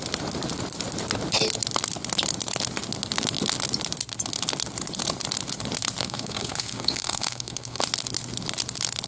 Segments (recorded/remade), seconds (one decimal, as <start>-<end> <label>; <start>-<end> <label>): 0.0-6.0 recorded; 6.0-7.8 remade; 7.8-9.1 recorded